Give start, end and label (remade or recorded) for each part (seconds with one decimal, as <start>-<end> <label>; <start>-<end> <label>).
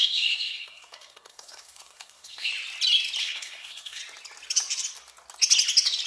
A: 0.0-2.5 remade; 2.5-3.2 recorded; 3.2-4.0 remade; 4.0-6.1 recorded